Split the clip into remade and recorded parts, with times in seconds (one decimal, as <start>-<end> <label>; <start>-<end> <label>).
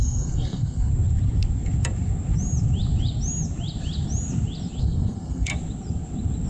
0.0-0.9 remade; 0.9-4.8 recorded; 4.8-5.5 remade; 5.5-6.5 recorded